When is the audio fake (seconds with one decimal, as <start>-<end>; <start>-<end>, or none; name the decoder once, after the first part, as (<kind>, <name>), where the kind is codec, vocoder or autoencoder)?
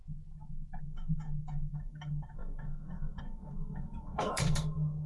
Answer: 0.8-5.1 (codec, SNAC)